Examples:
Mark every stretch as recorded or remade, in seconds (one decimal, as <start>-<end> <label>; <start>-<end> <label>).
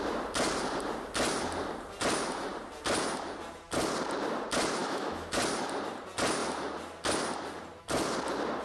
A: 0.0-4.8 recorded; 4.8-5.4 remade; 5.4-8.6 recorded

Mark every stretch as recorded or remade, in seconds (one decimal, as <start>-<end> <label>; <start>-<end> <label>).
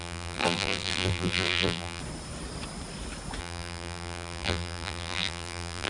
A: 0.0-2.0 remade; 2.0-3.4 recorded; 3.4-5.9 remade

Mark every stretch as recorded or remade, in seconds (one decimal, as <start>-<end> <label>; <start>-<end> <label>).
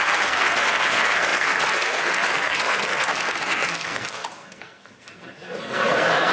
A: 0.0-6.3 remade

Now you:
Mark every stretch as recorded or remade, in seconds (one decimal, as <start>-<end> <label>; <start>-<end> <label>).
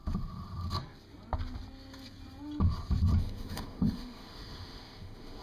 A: 0.0-3.2 recorded; 3.2-5.4 remade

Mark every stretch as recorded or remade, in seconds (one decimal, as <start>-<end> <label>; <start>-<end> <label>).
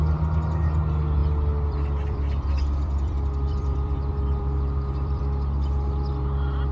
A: 0.0-1.2 recorded; 1.2-5.2 remade; 5.2-6.7 recorded